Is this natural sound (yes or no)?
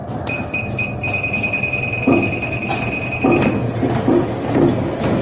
yes